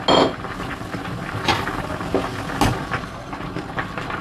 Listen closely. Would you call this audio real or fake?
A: real